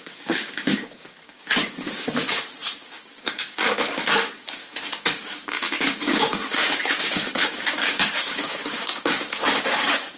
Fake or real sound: fake